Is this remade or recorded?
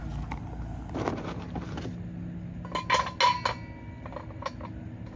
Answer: recorded